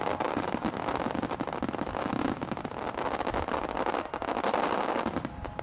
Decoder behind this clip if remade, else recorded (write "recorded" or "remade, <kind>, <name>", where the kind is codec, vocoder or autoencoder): recorded